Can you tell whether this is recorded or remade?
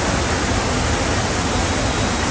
recorded